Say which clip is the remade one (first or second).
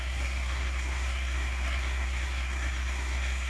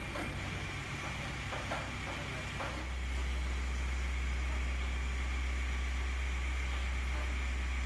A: first